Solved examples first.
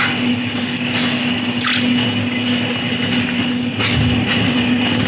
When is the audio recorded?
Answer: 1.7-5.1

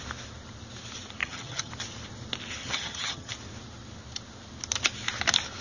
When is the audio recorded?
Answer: 0.0-1.2; 1.7-2.6; 3.3-5.6